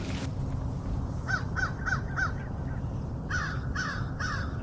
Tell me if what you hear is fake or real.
real